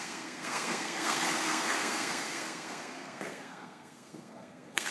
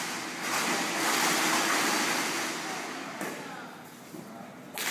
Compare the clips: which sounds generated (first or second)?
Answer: first